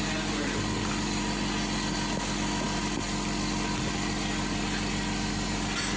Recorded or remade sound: recorded